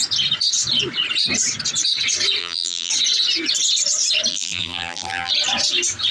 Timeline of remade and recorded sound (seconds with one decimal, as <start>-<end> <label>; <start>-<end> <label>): 0.0-2.4 recorded; 2.4-2.9 remade; 2.9-4.3 recorded; 4.3-5.3 remade; 5.3-6.1 recorded